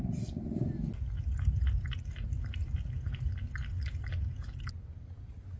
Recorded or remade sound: recorded